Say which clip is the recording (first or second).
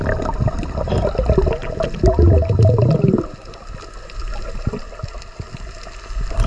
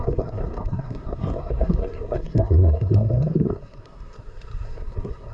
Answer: first